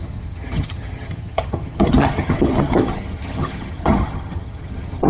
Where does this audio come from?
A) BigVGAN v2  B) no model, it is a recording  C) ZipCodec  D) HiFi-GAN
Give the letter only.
D